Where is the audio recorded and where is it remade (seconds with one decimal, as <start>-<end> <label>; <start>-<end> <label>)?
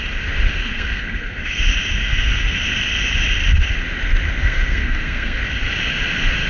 0.0-0.5 recorded; 0.5-1.6 remade; 1.6-2.0 recorded; 2.0-2.6 remade; 2.6-4.4 recorded; 4.4-5.4 remade; 5.4-6.5 recorded